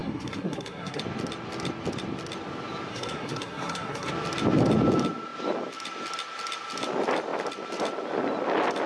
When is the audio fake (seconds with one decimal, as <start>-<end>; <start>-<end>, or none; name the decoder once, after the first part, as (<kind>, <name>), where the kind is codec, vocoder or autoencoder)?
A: 0.0-1.0 (codec, SNAC); 2.9-4.1